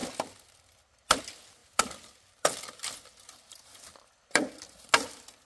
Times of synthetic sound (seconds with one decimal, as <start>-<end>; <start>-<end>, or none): none